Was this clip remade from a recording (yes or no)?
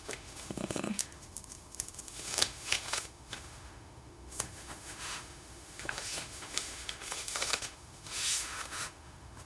yes